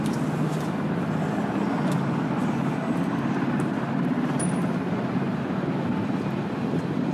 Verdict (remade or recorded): recorded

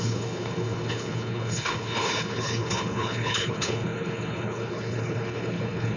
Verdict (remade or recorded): remade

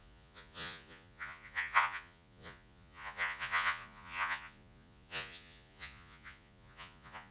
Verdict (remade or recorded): remade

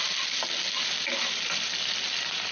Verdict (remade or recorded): recorded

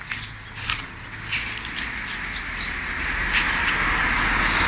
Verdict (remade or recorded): recorded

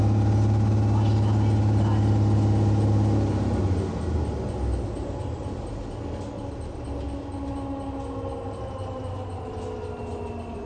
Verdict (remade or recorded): recorded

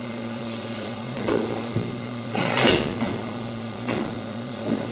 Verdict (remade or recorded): remade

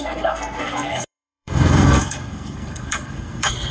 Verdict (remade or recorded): remade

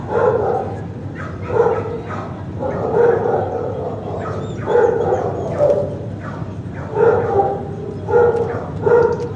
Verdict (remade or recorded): recorded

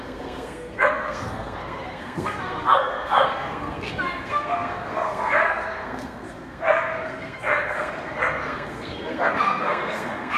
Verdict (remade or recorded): remade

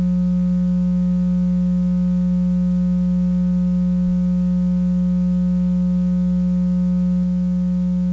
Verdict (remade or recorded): recorded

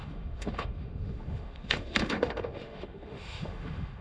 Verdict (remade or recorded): remade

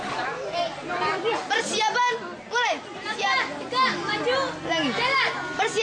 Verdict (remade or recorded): recorded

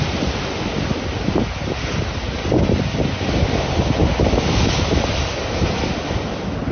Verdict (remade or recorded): recorded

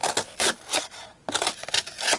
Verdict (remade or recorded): recorded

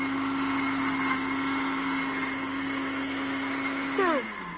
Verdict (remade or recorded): recorded